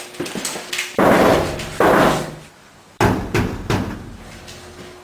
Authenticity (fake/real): real